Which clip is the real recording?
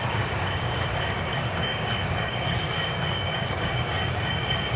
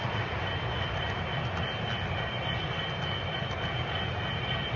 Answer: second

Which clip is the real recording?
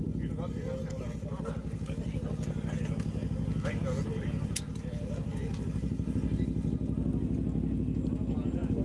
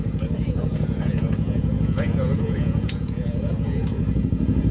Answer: first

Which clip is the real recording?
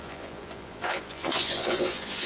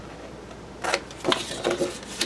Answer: second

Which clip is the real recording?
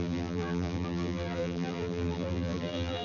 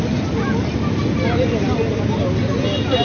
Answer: second